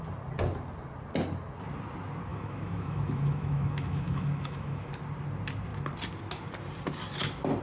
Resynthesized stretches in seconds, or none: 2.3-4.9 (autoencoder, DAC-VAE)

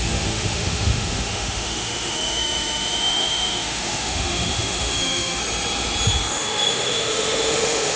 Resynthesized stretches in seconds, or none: 0.0-5.4 (autoencoder, DAC-VAE); 6.3-8.0

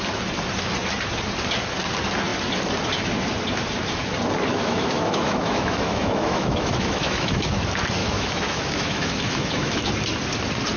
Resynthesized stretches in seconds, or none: 4.5-7.6 (autoencoder, DAC-VAE); 8.0-9.9

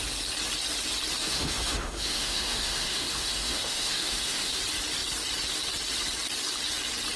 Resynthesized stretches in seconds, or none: 1.2-4.6 (autoencoder, DAC-VAE)

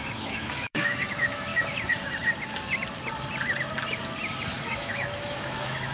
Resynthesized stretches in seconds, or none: 0.0-1.5 (autoencoder, DAC-VAE); 4.6-5.9